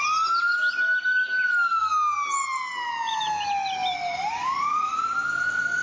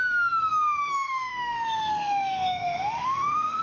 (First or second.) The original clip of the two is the first